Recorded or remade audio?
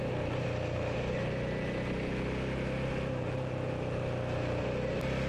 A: recorded